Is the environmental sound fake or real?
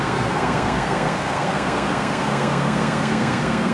fake